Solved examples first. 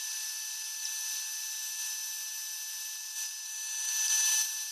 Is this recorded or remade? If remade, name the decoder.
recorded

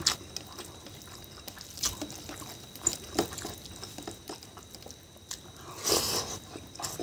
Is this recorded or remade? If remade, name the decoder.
recorded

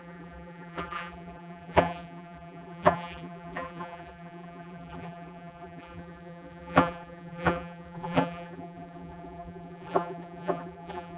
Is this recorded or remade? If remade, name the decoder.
remade, vocoder, BigVGAN v2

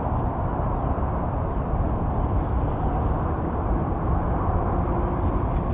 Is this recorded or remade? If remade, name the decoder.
remade, vocoder, BigVGAN v2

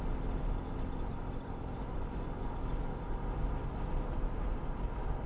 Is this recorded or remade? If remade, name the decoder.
recorded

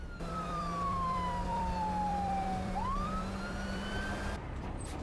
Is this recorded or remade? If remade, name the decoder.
remade, vocoder, BigVGAN v2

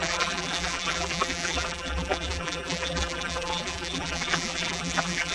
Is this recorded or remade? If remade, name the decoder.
remade, vocoder, BigVGAN v2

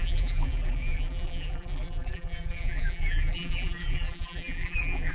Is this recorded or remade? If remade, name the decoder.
remade, vocoder, BigVGAN v2